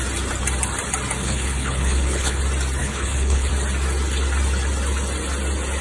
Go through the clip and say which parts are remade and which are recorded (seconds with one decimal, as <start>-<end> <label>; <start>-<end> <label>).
0.0-1.2 recorded; 1.2-2.4 remade; 2.4-2.8 recorded; 2.8-3.5 remade; 3.5-5.8 recorded

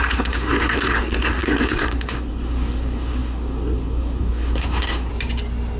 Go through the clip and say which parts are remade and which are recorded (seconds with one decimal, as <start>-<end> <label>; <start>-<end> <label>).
0.0-5.1 remade; 5.1-5.8 recorded

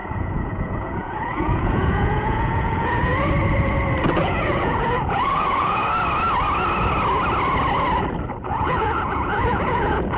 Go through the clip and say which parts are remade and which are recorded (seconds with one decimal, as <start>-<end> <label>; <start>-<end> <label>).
0.0-3.1 remade; 3.1-4.1 recorded; 4.1-5.8 remade; 5.8-8.4 recorded; 8.4-10.2 remade